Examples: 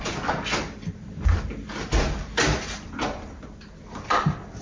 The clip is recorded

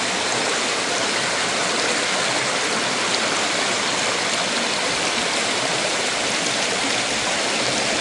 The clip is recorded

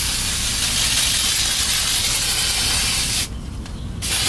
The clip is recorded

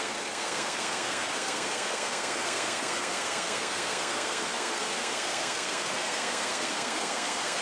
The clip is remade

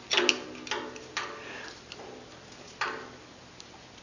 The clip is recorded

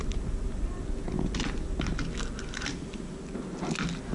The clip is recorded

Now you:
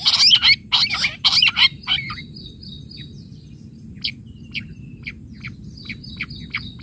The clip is recorded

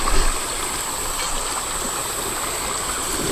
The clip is recorded